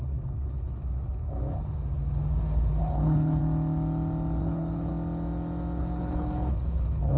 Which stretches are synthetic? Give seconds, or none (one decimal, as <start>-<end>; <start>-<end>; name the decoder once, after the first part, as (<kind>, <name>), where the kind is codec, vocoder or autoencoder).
0.0-0.8 (codec, HILCodec); 2.8-3.4; 4.4-4.9; 5.8-7.2